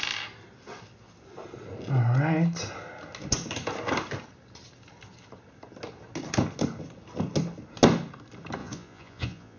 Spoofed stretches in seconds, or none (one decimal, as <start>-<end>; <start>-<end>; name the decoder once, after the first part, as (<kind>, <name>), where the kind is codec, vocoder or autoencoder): 8.6-9.6 (vocoder, Vocos)